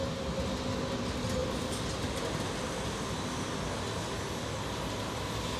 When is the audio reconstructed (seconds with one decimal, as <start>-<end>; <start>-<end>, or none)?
none